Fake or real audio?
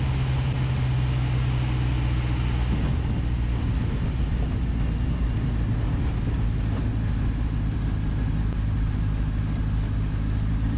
real